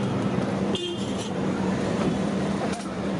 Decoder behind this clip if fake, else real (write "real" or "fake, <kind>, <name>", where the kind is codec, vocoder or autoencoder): fake, vocoder, BigVGAN v2